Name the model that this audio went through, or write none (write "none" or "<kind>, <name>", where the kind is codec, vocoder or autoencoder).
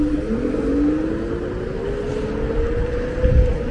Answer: none